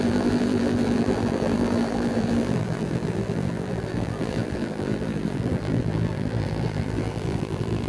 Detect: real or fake fake